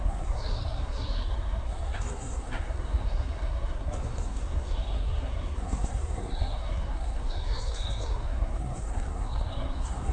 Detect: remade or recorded remade